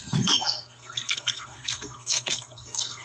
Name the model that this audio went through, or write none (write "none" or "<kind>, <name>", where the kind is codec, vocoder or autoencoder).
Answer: codec, SNAC